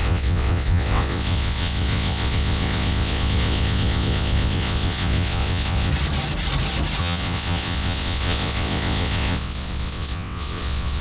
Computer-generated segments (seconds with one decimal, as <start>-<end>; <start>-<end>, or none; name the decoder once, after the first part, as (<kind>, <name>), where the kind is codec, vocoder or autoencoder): 0.0-5.9 (vocoder, WaveNeXt); 7.0-11.0